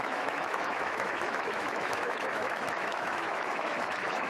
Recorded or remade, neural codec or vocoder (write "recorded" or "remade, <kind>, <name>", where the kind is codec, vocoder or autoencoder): remade, autoencoder, DAC-VAE